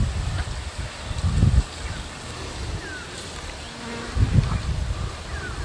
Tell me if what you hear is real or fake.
real